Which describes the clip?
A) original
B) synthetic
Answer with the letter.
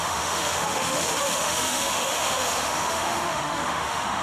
B